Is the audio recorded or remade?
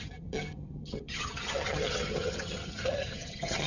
remade